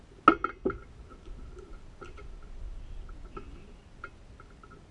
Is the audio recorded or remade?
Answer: recorded